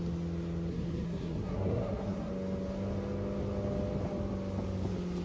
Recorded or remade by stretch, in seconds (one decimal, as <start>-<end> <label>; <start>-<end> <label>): 0.0-0.7 recorded; 0.7-2.3 remade; 2.3-5.2 recorded